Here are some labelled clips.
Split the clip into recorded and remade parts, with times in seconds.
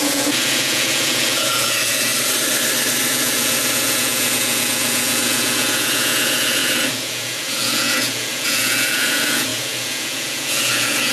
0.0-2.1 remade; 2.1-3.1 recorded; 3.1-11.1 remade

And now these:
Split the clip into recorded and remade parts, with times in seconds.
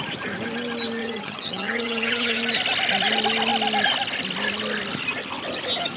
0.0-1.0 recorded; 1.0-2.4 remade; 2.4-6.0 recorded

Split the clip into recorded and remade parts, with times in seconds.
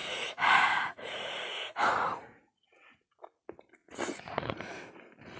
0.0-3.2 remade; 3.2-3.8 recorded; 3.8-4.9 remade; 4.9-5.4 recorded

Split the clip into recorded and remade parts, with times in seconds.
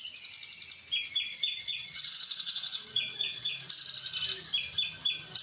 0.0-1.3 recorded; 1.3-3.5 remade; 3.5-5.4 recorded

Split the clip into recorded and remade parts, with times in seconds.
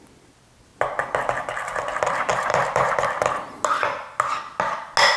0.0-2.3 recorded; 2.3-3.0 remade; 3.0-5.2 recorded